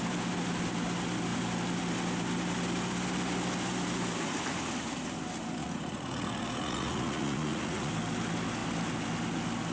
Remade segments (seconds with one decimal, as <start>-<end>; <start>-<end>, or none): 5.6-7.9